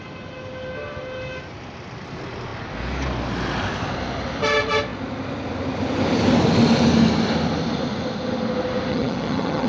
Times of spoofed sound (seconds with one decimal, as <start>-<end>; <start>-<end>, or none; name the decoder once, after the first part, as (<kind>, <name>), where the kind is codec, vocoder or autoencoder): 8.9-9.7 (vocoder, HiFi-GAN)